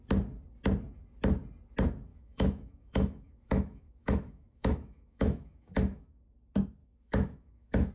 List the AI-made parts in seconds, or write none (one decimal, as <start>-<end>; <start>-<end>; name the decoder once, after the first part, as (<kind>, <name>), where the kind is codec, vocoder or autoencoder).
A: 2.1-6.2 (autoencoder, DAC-VAE); 6.8-7.9